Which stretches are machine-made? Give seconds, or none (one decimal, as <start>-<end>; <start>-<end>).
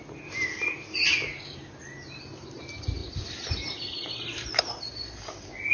none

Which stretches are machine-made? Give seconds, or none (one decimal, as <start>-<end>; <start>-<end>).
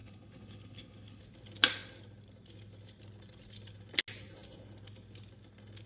0.0-1.2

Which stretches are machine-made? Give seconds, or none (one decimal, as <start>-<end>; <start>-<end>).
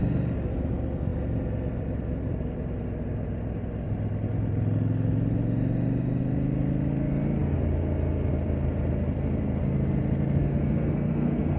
10.4-11.6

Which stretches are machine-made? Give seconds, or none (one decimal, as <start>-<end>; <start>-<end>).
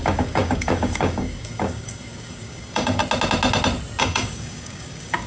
0.0-3.0; 4.0-5.3